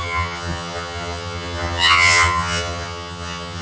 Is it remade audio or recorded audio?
remade